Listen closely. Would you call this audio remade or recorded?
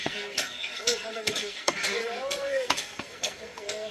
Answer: remade